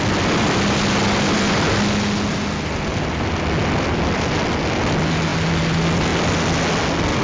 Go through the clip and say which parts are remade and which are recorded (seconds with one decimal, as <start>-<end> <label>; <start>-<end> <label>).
0.0-7.2 recorded